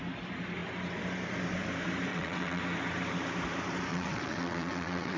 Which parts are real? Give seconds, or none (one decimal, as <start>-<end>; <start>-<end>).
0.0-2.1; 2.6-3.9